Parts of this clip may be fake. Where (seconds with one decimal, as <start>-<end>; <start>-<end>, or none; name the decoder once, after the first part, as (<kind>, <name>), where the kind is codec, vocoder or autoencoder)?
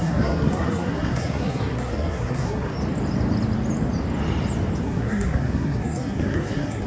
0.0-2.7 (codec, SNAC); 4.8-6.9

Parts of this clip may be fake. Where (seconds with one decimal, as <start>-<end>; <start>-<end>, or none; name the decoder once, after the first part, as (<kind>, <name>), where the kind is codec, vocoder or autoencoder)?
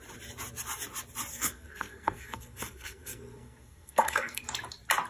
1.3-4.4 (codec, SNAC)